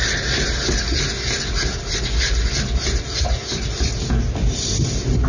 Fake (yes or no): no